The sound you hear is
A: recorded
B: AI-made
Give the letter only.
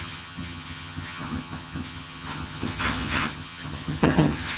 B